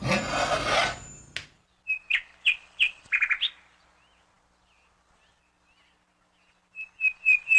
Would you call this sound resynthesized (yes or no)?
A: no